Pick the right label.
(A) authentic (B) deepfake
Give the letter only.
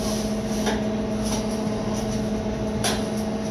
A